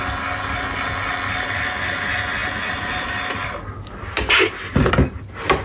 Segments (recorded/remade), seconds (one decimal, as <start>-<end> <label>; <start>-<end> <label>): 0.0-5.6 recorded